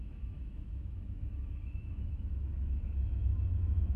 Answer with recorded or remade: remade